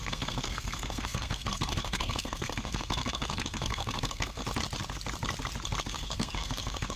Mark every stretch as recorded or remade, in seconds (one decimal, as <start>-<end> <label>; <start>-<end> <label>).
0.0-4.4 remade; 4.4-5.8 recorded; 5.8-7.0 remade